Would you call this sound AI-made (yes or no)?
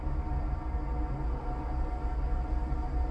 no